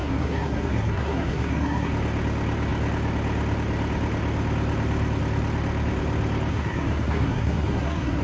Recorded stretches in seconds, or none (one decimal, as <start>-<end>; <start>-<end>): 1.9-6.5